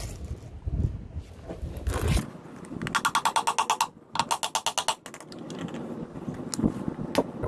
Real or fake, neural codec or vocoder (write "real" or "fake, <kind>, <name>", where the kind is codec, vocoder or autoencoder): real